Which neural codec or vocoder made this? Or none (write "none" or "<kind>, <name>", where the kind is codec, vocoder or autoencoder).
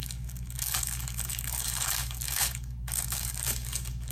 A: codec, DAC